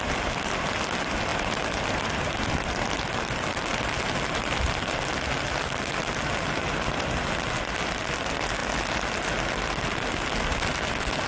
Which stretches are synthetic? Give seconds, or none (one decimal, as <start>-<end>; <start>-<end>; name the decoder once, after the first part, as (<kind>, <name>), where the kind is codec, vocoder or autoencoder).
1.3-2.1 (vocoder, BigVGAN v2); 3.7-5.0